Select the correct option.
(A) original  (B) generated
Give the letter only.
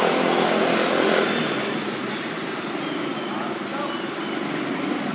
A